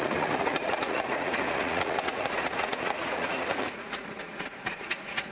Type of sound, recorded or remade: remade